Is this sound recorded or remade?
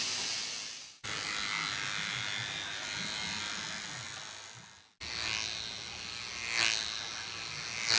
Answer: recorded